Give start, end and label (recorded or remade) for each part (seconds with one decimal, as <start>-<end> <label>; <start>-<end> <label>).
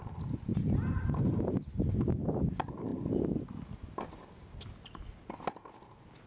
0.0-0.5 recorded; 0.5-1.2 remade; 1.2-6.3 recorded